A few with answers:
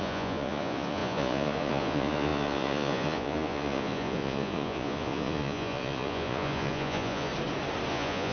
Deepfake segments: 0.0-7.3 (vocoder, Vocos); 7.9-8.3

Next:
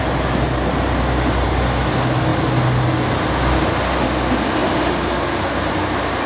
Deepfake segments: none